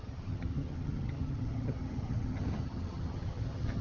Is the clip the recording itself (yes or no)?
no